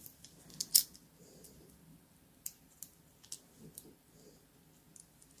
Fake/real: real